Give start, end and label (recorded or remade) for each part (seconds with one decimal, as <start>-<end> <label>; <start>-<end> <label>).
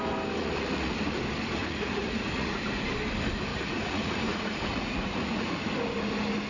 0.0-0.4 recorded; 0.4-1.0 remade; 1.0-1.6 recorded; 1.6-2.6 remade; 2.6-3.5 recorded; 3.5-5.7 remade; 5.7-6.5 recorded